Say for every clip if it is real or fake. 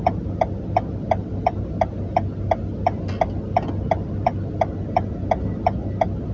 real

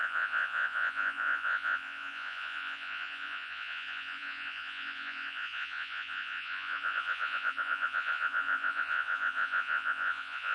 fake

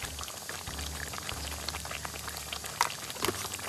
real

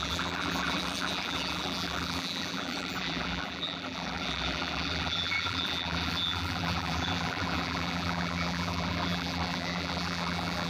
fake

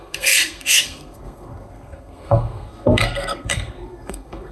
fake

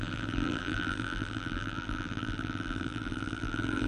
fake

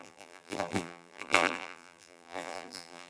fake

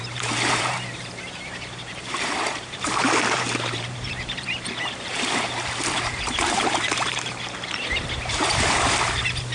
fake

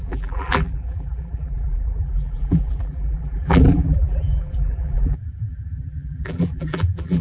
fake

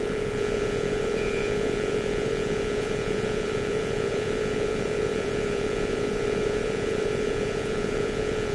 fake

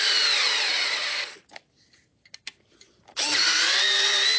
real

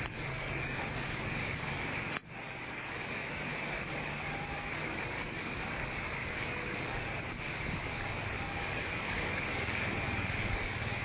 fake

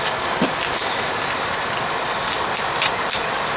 real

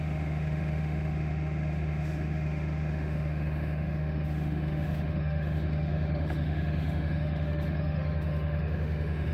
fake